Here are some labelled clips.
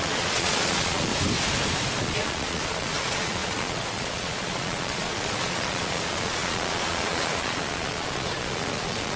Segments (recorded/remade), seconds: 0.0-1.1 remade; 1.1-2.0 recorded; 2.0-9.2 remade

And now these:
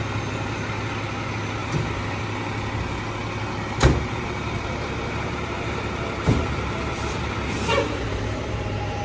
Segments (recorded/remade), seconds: 0.0-1.6 recorded; 1.6-2.2 remade; 2.2-3.8 recorded; 3.8-9.0 remade

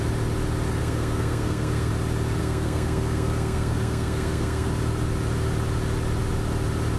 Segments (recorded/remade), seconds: 0.0-0.8 recorded; 0.8-1.9 remade; 1.9-2.4 recorded; 2.4-4.7 remade; 4.7-7.0 recorded

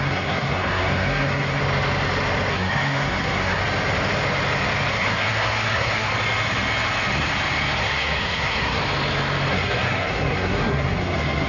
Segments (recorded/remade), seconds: 0.0-1.6 remade; 1.6-2.5 recorded; 2.5-3.6 remade; 3.6-4.9 recorded; 4.9-6.1 remade; 6.1-7.8 recorded; 7.8-8.8 remade; 8.8-9.5 recorded; 9.5-11.5 remade

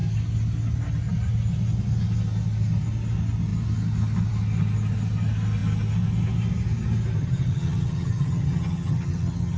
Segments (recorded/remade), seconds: 0.0-7.2 recorded; 7.2-9.6 remade

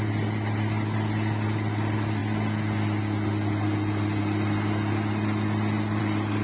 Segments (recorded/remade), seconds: 0.0-6.4 recorded